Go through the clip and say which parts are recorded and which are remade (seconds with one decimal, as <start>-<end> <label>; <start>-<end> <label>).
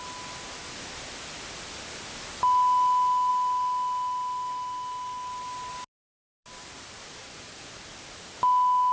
0.0-7.2 recorded; 7.2-7.7 remade; 7.7-8.9 recorded